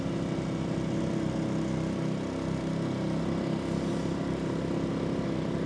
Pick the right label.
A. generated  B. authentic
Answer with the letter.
B